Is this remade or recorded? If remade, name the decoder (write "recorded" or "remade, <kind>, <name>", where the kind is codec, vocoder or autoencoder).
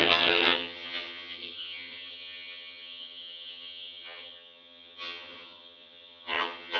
remade, vocoder, HiFi-GAN